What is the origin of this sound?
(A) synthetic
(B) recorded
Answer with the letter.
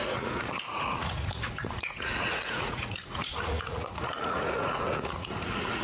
A